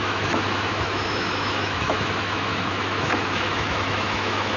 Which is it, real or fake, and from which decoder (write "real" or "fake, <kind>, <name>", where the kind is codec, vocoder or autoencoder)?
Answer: fake, autoencoder, DAC-VAE